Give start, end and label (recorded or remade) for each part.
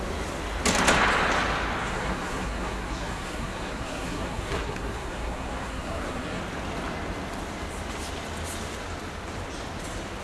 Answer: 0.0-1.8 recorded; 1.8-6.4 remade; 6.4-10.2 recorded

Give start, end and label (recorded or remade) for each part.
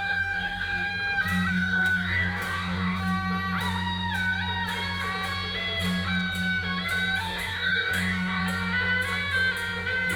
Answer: 0.0-0.9 remade; 0.9-1.5 recorded; 1.5-3.0 remade; 3.0-7.2 recorded; 7.2-8.4 remade; 8.4-10.2 recorded